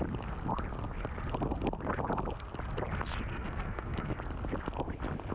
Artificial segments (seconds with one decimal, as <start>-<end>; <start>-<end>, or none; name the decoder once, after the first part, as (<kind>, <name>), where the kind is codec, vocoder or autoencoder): 3.3-4.1 (codec, SNAC)